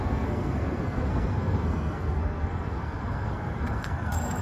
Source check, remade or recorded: remade